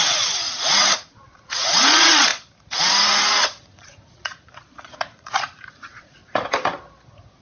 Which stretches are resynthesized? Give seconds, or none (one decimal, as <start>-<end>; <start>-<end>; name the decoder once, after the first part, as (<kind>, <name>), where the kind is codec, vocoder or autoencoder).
0.0-2.3 (vocoder, Vocos); 2.8-6.2